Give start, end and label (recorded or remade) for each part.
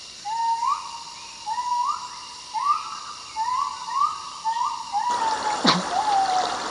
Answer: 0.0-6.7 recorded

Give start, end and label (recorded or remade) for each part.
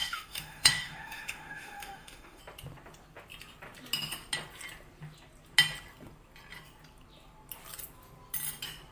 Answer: 0.0-2.4 remade; 2.4-8.9 recorded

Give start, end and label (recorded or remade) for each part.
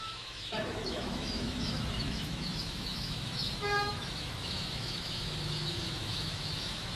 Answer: 0.0-7.0 remade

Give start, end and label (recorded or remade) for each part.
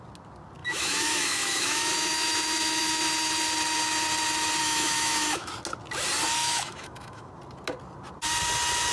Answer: 0.0-0.6 recorded; 0.6-3.0 remade; 3.0-4.6 recorded; 4.6-5.5 remade; 5.5-6.4 recorded; 6.4-7.3 remade; 7.3-8.9 recorded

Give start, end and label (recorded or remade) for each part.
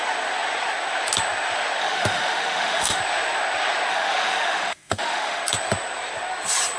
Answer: 0.0-1.8 recorded; 1.8-3.0 remade; 3.0-3.9 recorded; 3.9-5.4 remade; 5.4-6.8 recorded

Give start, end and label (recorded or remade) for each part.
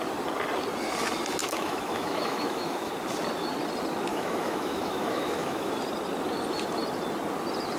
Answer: 0.0-1.4 recorded; 1.4-2.9 remade; 2.9-4.1 recorded; 4.1-5.7 remade; 5.7-7.8 recorded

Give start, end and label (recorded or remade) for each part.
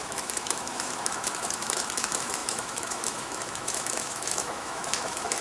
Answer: 0.0-5.4 remade